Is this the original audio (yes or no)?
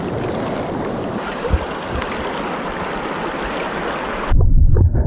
yes